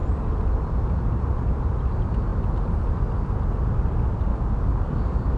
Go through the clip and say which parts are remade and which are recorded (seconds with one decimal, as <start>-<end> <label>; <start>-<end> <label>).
0.0-4.3 recorded; 4.3-5.4 remade